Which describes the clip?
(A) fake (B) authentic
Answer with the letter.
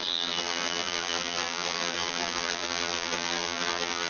A